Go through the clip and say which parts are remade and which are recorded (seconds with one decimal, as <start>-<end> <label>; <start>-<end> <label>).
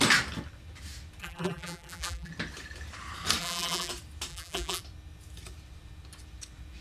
0.0-1.2 recorded; 1.2-2.3 remade; 2.3-3.4 recorded; 3.4-3.9 remade; 3.9-4.3 recorded; 4.3-4.8 remade; 4.8-6.8 recorded